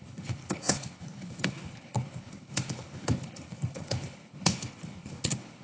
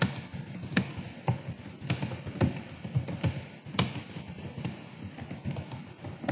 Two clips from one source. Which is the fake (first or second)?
first